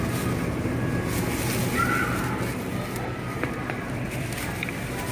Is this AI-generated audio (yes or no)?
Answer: no